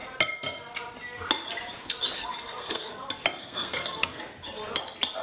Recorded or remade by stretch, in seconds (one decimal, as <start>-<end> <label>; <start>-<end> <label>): 0.0-2.2 recorded; 2.2-2.9 remade; 2.9-3.4 recorded; 3.4-4.2 remade; 4.2-5.2 recorded